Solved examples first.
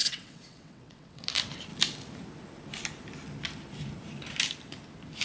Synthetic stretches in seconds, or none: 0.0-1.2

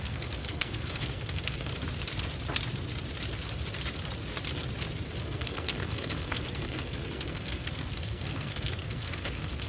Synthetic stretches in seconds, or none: 0.0-1.7; 5.2-9.7

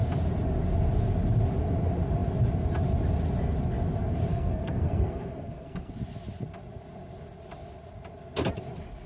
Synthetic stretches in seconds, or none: 4.3-5.9

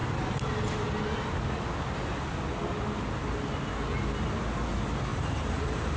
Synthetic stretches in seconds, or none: 5.1-6.0

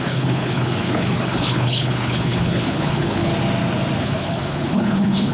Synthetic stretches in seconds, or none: 0.0-3.3; 4.0-5.3

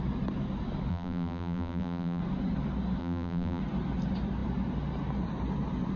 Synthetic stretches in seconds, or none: 0.9-2.2; 3.0-3.6